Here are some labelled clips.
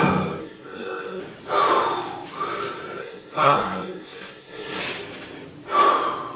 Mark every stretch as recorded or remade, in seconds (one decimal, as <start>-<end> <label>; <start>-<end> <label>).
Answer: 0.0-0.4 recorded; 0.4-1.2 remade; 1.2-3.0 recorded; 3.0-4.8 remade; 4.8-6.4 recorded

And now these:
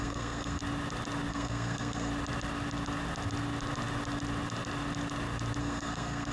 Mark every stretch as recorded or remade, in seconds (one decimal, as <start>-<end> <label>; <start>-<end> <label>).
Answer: 0.0-0.6 remade; 0.6-1.3 recorded; 1.3-2.1 remade; 2.1-5.6 recorded; 5.6-6.3 remade

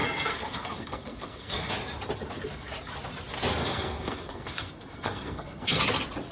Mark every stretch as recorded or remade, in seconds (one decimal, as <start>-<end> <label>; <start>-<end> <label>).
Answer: 0.0-1.7 remade; 1.7-3.6 recorded; 3.6-5.8 remade; 5.8-6.3 recorded